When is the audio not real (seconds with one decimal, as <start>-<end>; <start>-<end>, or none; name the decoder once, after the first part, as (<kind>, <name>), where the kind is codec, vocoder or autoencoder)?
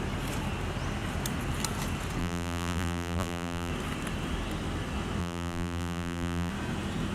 2.2-3.7 (vocoder, BigVGAN v2); 5.2-6.5